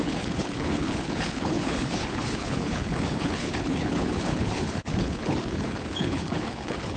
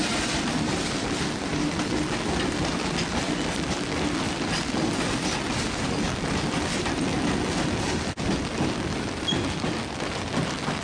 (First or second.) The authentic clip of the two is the second